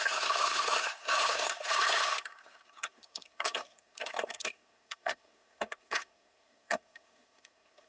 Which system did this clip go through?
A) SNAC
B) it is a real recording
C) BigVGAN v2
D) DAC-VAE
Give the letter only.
A